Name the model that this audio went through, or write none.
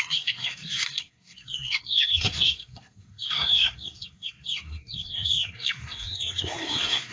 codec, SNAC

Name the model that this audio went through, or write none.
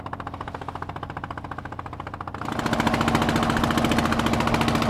none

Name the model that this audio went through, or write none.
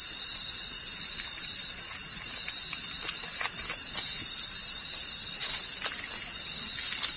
none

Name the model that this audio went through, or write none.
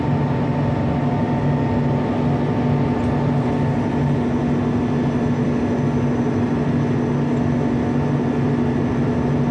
none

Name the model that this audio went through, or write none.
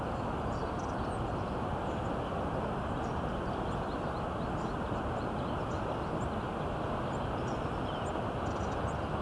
none